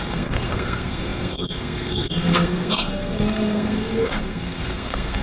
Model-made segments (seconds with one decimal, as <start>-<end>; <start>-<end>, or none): 0.0-5.2